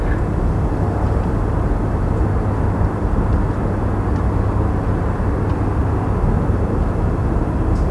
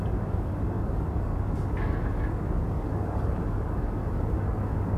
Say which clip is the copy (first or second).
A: second